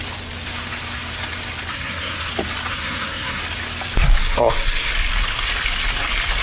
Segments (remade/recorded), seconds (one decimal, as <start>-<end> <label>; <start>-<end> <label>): 0.0-1.7 recorded; 1.7-2.3 remade; 2.3-2.7 recorded; 2.7-3.4 remade; 3.4-4.2 recorded; 4.2-4.9 remade; 4.9-6.4 recorded

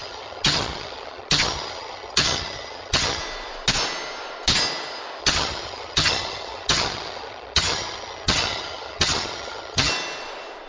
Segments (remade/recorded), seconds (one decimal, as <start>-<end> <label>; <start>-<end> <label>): 0.0-3.2 remade; 3.2-5.2 recorded; 5.2-9.9 remade; 9.9-10.7 recorded